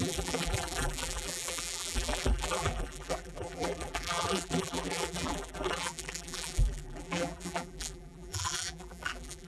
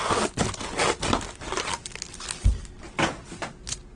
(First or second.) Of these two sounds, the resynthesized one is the first